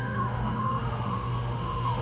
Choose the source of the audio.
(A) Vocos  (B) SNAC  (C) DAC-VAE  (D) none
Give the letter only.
C